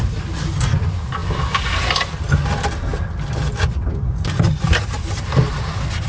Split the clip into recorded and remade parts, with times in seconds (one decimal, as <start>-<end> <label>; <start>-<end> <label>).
0.0-1.2 remade; 1.2-2.2 recorded; 2.2-6.1 remade